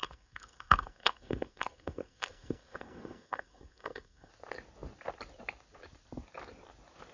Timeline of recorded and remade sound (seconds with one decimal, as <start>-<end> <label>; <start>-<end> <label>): 0.0-4.3 remade; 4.3-7.1 recorded